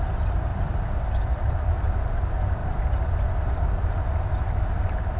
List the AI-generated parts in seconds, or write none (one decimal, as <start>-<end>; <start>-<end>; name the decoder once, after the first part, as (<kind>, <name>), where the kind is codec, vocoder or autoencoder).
0.5-1.5 (vocoder, BigVGAN v2); 2.6-3.4